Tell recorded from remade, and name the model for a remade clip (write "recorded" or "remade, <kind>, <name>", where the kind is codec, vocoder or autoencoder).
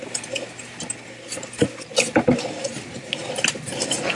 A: recorded